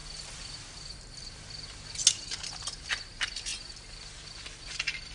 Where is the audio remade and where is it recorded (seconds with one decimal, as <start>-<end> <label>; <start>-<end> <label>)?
0.0-2.1 recorded; 2.1-3.5 remade; 3.5-5.1 recorded